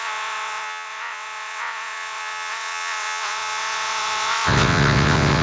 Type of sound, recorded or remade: remade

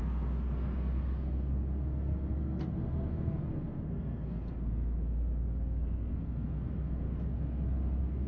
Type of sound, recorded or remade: remade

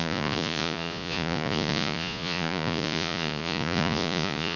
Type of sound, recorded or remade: remade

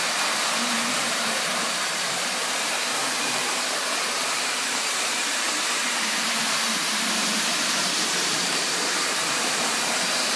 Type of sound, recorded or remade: remade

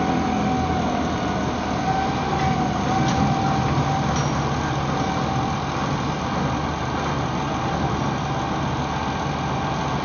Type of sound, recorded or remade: recorded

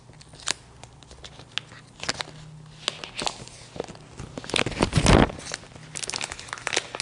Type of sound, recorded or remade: recorded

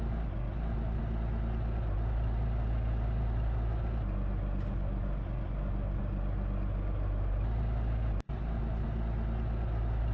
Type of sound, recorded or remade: recorded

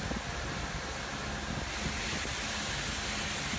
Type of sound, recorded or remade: recorded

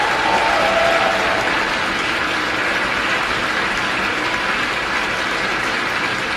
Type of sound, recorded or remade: recorded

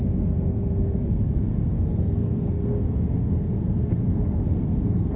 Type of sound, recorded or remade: remade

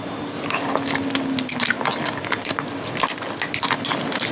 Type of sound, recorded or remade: recorded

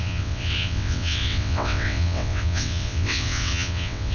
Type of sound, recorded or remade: remade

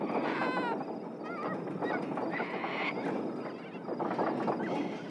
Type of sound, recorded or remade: recorded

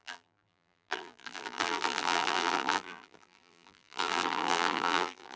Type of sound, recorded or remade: remade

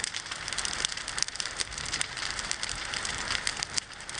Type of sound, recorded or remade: recorded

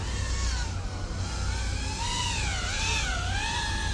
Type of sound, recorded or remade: recorded